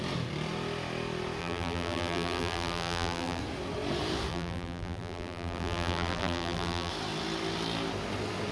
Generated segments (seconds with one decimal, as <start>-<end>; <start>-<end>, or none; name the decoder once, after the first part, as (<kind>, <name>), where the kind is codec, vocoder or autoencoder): 1.4-3.4 (vocoder, BigVGAN v2); 4.3-6.9